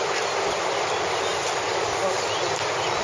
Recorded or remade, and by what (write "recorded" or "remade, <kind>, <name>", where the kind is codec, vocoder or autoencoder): remade, vocoder, BigVGAN v2